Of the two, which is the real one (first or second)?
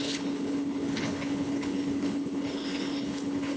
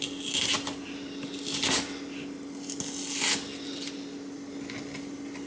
second